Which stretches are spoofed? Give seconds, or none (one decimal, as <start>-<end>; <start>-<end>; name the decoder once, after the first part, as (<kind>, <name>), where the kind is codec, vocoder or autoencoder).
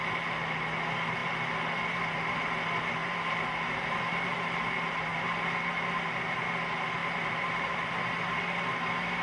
3.0-4.0 (vocoder, BigVGAN v2); 7.0-7.9